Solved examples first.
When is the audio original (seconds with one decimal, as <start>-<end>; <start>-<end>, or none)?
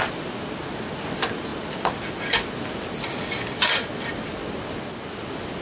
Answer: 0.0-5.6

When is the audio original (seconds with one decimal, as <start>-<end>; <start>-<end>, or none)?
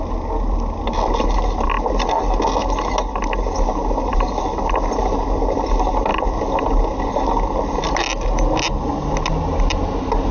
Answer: 0.0-10.3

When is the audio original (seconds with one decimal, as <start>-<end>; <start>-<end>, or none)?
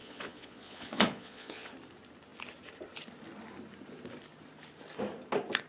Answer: 1.7-5.7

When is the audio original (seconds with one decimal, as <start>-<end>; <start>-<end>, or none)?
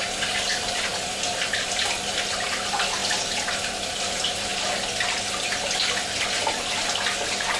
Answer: 0.0-7.6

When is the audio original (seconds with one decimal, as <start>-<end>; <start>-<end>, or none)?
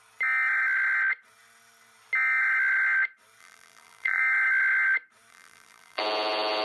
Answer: 0.0-3.4; 4.2-5.3; 6.0-6.6